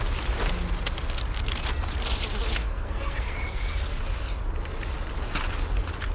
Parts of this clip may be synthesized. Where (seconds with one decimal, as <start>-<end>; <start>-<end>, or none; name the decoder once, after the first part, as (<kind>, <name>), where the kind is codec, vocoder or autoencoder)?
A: 2.6-3.6 (codec, SNAC)